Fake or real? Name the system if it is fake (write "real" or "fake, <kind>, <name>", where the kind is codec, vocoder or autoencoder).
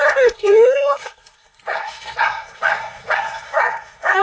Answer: fake, codec, SNAC